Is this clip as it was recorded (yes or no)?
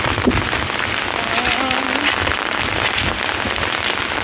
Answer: yes